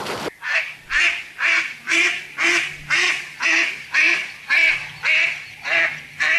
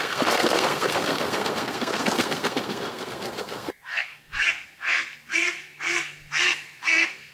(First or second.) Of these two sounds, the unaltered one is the first